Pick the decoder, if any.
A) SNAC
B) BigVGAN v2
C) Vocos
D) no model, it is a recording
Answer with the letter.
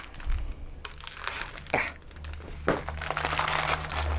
D